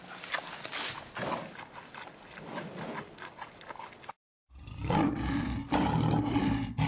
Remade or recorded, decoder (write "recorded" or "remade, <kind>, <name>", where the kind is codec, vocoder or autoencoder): recorded